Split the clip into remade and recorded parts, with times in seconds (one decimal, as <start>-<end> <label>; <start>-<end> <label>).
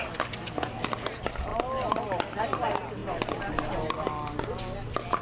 0.0-5.2 recorded